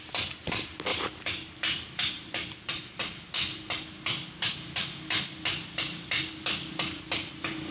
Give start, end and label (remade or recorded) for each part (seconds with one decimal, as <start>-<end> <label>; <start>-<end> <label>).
0.0-0.9 recorded; 0.9-3.0 remade; 3.0-7.7 recorded